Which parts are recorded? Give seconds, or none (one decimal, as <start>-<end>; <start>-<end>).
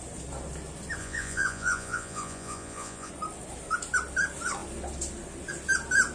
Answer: 0.0-1.0; 3.1-6.1